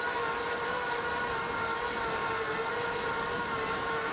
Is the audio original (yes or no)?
yes